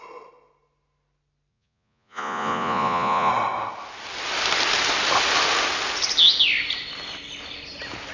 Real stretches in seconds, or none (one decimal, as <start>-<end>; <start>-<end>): 0.0-1.5; 3.3-8.1